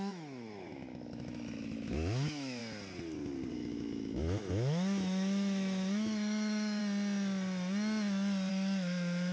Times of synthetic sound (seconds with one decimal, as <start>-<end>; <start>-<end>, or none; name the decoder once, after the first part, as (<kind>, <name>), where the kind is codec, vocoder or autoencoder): 0.0-2.6 (autoencoder, DAC-VAE); 3.5-6.8; 8.5-9.3

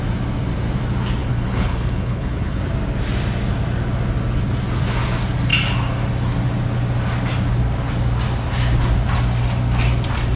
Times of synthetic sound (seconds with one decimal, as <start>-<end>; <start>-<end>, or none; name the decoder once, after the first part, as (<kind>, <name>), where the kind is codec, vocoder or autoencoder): 1.2-2.6 (codec, HILCodec)